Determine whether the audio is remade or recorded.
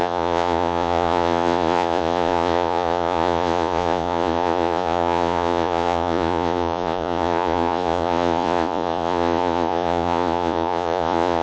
remade